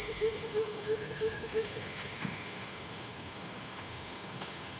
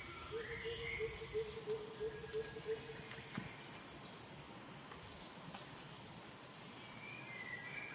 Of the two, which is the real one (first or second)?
second